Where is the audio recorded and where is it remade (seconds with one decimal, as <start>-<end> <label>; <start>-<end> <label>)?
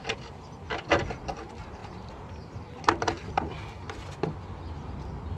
0.0-5.4 recorded